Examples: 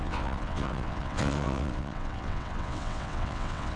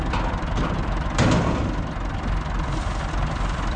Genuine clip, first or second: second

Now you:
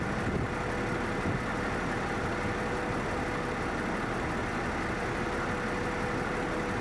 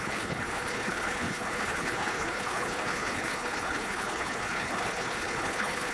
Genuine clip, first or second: first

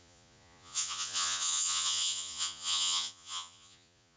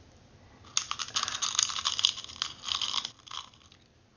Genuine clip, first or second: second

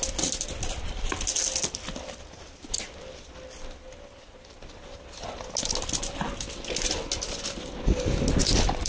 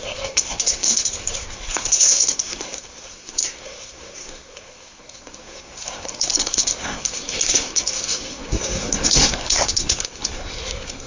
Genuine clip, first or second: first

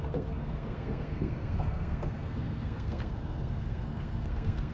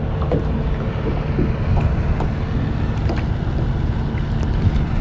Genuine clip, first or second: second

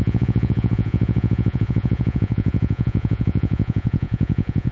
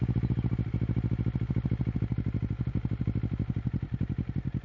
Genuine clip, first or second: second